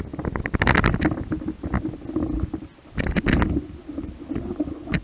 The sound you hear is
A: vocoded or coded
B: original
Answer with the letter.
B